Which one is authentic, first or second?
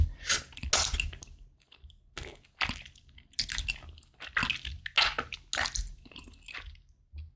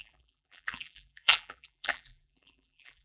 first